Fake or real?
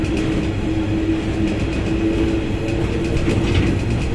real